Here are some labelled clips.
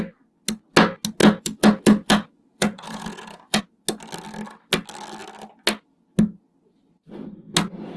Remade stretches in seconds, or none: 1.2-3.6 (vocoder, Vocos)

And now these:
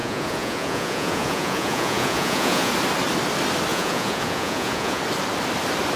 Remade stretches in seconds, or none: 0.0-2.7 (vocoder, Vocos); 3.7-5.0

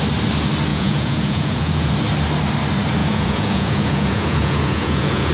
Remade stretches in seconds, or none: 0.7-1.9 (vocoder, Vocos); 3.0-5.3